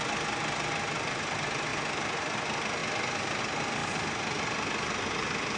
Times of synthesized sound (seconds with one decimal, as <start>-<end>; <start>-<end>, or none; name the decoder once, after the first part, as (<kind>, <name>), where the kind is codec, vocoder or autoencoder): none